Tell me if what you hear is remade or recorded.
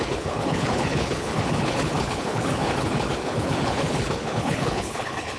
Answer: remade